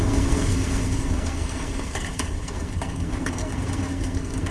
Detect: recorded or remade remade